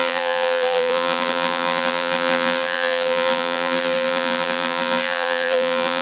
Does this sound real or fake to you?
fake